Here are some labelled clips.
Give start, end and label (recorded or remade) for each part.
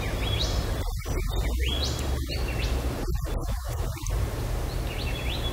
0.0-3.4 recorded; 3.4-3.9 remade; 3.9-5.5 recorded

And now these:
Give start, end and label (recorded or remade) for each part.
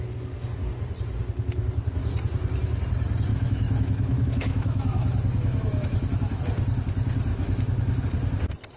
0.0-3.3 recorded; 3.3-6.4 remade; 6.4-7.3 recorded; 7.3-8.0 remade; 8.0-8.8 recorded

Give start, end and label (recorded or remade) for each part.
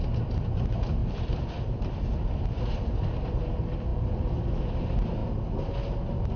0.0-1.0 recorded; 1.0-3.3 remade; 3.3-6.4 recorded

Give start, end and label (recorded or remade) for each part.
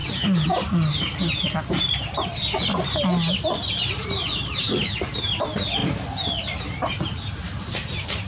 0.0-1.6 recorded; 1.6-2.3 remade; 2.3-3.4 recorded; 3.4-5.8 remade; 5.8-6.6 recorded; 6.6-8.3 remade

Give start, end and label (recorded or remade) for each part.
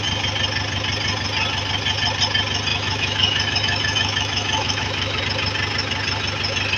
0.0-2.7 recorded; 2.7-5.2 remade; 5.2-6.8 recorded